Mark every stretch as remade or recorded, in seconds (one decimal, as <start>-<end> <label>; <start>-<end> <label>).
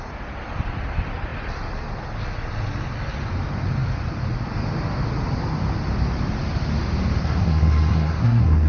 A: 0.0-7.2 recorded; 7.2-8.7 remade